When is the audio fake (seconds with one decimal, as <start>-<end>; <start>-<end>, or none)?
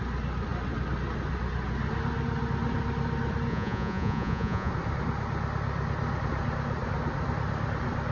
3.5-4.7